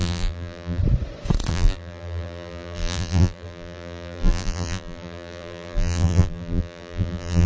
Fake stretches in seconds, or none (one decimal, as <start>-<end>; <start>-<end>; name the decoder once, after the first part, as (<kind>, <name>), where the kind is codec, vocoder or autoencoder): 0.0-0.8 (vocoder, BigVGAN v2); 1.5-7.5